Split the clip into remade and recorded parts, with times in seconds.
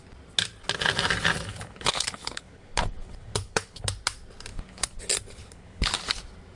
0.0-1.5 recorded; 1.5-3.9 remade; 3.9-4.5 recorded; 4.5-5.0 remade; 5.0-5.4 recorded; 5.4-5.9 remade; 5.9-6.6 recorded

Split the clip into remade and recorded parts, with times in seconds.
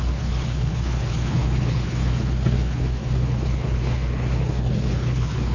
0.0-5.5 remade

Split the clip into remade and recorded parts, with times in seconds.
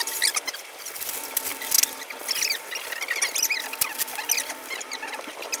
0.0-5.6 recorded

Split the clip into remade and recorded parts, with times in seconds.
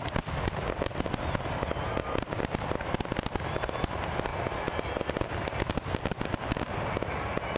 0.0-7.6 recorded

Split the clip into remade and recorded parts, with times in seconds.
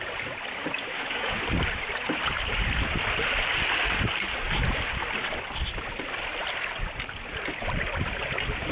0.0-0.9 recorded; 0.9-1.4 remade; 1.4-8.7 recorded